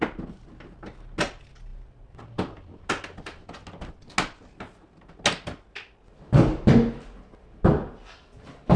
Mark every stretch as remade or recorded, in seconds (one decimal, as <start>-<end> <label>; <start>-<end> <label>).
0.0-8.8 recorded